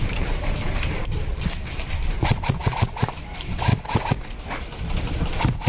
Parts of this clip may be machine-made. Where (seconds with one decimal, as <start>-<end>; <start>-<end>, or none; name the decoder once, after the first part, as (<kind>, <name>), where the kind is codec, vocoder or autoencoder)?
0.0-2.6 (vocoder, BigVGAN v2); 3.1-3.7; 4.4-5.7